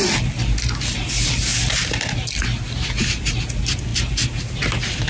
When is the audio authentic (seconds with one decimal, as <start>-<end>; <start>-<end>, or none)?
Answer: 0.0-5.1